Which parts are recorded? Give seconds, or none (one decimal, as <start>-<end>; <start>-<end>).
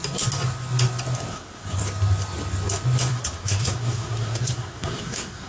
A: 0.0-1.3; 1.8-3.1